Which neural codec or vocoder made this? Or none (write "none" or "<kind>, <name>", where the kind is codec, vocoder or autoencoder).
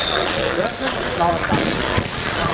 vocoder, Vocos